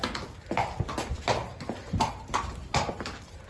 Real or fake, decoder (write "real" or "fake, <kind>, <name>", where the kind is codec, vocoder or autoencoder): real